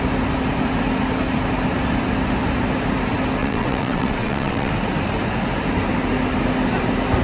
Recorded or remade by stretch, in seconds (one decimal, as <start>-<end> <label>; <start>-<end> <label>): 0.0-3.4 recorded; 3.4-4.7 remade; 4.7-7.2 recorded